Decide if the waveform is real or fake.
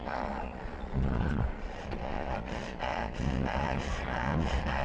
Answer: fake